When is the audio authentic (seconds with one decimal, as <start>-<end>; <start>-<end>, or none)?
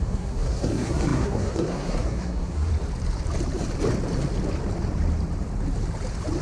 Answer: 2.7-6.4